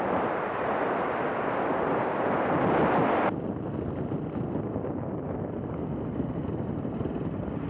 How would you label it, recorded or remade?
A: recorded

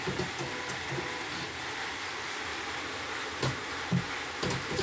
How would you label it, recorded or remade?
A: recorded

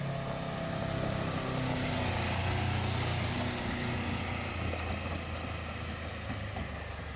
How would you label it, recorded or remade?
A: recorded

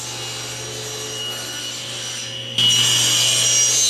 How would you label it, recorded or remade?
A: recorded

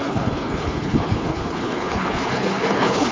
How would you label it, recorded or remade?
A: remade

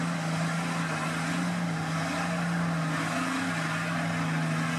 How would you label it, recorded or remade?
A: recorded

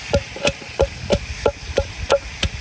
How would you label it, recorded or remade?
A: recorded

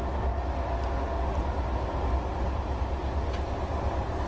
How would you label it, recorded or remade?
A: recorded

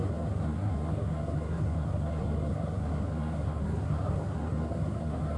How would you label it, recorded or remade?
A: remade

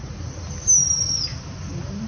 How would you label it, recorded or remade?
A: recorded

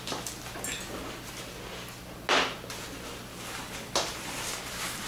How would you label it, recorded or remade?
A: recorded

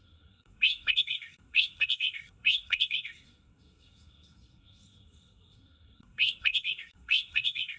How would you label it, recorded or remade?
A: remade